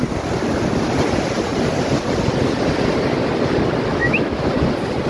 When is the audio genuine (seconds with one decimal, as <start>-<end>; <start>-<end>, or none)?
0.0-3.9; 4.5-5.1